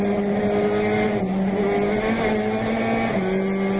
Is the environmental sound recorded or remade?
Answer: recorded